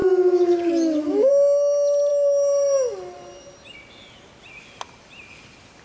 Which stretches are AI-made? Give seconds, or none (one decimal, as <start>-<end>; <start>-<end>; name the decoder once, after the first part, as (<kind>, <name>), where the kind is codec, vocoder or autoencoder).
0.0-1.3 (autoencoder, DAC-VAE)